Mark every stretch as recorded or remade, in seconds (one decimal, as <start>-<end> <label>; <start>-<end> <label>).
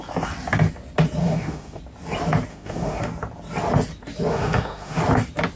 0.0-1.2 recorded; 1.2-1.8 remade; 1.8-2.5 recorded; 2.5-3.0 remade; 3.0-4.3 recorded; 4.3-5.0 remade; 5.0-5.6 recorded